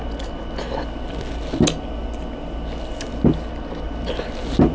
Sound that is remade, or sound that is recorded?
recorded